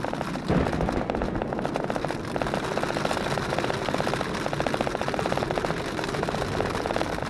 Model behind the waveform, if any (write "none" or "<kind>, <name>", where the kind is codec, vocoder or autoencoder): none